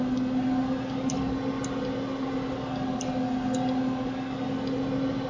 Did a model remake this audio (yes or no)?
no